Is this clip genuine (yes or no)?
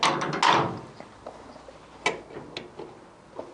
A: yes